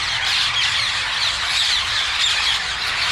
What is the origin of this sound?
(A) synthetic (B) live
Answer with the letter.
A